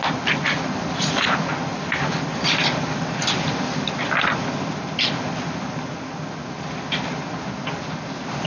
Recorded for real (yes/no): yes